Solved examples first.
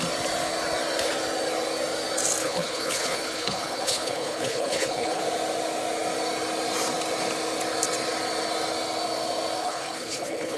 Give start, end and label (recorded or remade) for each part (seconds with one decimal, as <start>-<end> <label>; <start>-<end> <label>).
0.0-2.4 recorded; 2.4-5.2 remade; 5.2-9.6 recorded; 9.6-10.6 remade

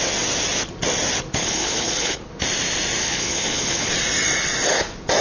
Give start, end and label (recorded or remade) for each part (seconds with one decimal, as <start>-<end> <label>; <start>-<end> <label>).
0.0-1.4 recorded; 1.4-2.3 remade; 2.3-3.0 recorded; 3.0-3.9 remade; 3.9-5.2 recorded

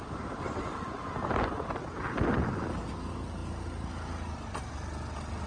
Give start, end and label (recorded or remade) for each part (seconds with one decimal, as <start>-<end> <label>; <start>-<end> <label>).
0.0-5.5 recorded